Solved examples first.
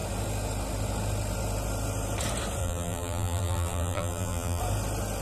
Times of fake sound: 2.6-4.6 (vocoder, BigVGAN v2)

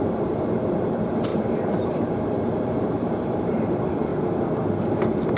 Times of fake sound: 0.0-4.1 (vocoder, BigVGAN v2)

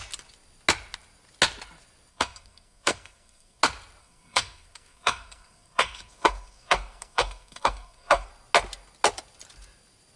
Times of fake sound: 2.1-3.6 (codec, SNAC); 4.0-8.3